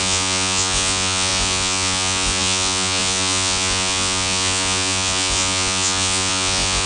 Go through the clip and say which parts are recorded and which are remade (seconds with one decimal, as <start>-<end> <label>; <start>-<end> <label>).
0.0-6.9 remade